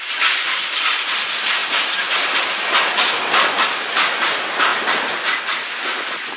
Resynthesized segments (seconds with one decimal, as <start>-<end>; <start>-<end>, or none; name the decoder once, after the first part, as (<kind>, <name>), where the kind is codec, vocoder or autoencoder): none